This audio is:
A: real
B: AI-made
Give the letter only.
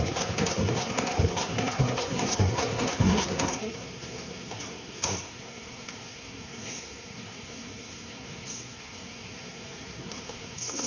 B